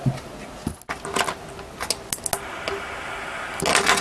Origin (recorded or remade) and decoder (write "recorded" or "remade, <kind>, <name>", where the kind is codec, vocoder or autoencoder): recorded